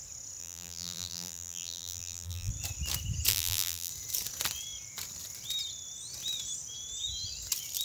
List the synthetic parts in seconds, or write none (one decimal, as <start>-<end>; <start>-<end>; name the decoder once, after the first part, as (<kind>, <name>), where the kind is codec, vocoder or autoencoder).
0.4-2.5 (vocoder, BigVGAN v2); 3.3-3.9